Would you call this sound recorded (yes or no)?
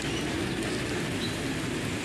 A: yes